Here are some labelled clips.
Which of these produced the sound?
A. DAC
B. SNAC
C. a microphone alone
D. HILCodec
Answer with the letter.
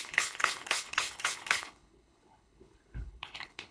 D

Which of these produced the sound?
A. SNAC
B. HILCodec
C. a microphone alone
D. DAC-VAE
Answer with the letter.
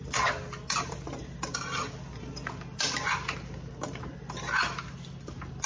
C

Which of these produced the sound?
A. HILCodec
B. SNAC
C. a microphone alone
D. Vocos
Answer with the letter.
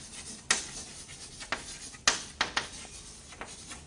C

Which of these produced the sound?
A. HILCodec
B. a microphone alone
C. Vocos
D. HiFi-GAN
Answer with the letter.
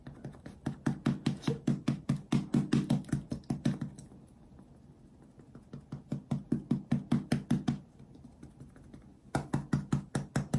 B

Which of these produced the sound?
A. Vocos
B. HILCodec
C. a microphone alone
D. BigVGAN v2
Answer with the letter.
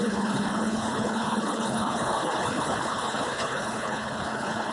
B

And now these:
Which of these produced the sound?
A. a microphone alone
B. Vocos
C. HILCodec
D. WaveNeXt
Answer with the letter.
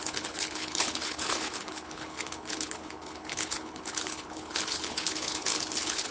C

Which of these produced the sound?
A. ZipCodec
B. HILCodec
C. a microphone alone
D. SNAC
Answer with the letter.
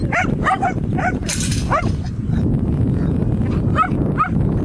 C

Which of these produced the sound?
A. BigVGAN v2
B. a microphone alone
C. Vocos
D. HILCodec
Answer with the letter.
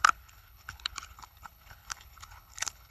D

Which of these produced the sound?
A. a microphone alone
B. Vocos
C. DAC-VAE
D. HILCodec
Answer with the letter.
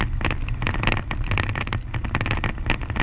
A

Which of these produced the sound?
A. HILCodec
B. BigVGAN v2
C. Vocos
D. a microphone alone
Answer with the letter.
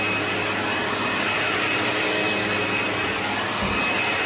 D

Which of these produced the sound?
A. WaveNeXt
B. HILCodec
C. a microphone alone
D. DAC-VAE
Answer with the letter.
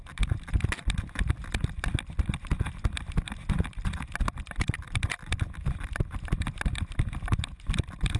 C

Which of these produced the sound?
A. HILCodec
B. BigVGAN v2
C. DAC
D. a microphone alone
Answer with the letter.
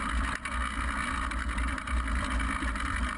D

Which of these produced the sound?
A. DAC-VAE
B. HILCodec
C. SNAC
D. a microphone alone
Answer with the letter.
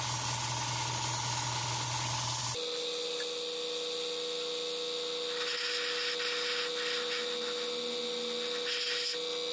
D